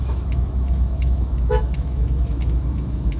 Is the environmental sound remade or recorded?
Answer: remade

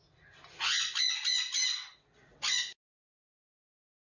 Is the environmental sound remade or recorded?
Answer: recorded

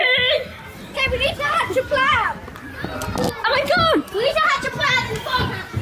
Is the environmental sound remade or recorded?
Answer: recorded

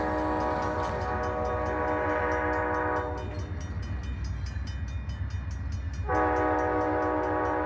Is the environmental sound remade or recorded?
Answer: recorded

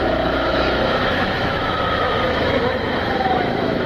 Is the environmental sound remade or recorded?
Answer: remade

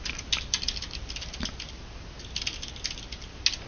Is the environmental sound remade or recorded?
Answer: recorded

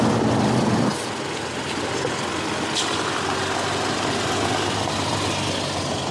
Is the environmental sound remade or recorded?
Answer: recorded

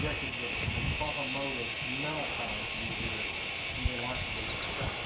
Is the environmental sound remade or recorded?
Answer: recorded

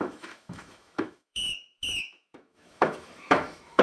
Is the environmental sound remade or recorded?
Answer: remade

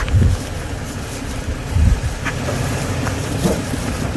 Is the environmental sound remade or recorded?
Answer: recorded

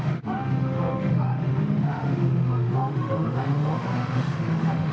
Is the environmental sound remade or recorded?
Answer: remade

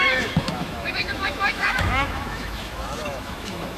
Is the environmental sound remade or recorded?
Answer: remade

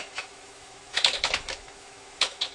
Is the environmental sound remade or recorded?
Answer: remade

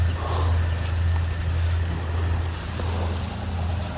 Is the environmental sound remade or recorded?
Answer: recorded